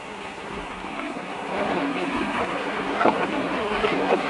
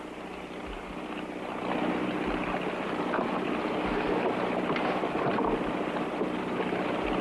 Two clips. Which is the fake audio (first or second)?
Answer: first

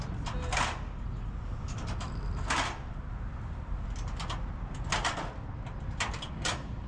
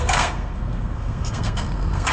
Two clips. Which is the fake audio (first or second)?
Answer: second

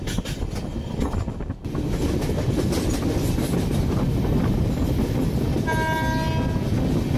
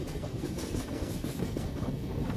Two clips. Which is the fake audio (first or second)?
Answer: second